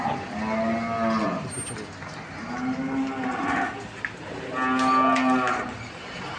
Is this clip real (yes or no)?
yes